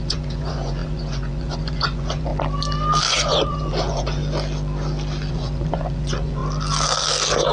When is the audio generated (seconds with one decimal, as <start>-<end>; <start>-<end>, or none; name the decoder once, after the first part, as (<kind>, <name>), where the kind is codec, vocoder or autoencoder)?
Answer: 0.0-2.3 (vocoder, Vocos); 3.1-4.2; 5.3-6.4